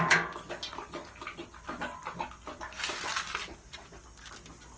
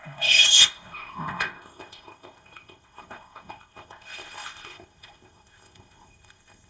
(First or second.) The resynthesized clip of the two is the second